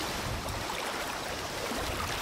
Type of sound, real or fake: fake